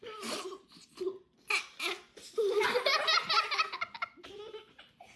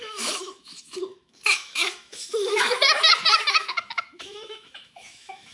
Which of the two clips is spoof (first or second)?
second